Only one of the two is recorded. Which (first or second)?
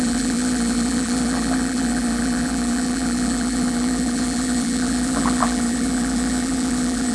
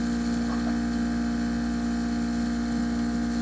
second